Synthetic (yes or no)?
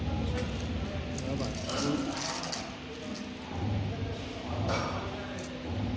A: no